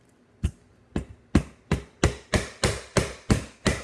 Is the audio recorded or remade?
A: recorded